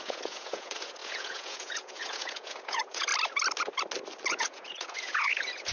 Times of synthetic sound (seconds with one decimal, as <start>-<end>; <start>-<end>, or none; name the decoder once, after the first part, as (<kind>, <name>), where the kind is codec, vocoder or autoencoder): 0.0-3.1 (vocoder, Vocos); 4.3-5.7